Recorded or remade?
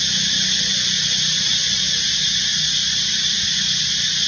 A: recorded